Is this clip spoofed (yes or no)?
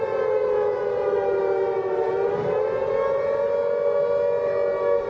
no